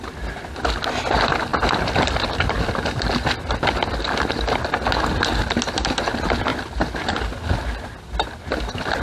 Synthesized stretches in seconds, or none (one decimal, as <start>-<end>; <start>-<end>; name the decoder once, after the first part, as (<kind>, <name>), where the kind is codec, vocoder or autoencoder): 1.5-3.6 (vocoder, BigVGAN v2); 6.5-7.3